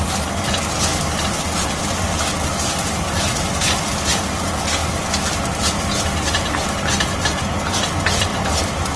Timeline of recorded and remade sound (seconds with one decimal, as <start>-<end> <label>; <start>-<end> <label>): 0.0-4.8 recorded; 4.8-5.7 remade; 5.7-8.3 recorded; 8.3-9.0 remade